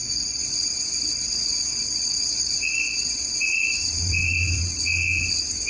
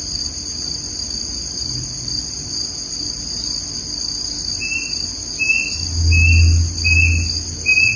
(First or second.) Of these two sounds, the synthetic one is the first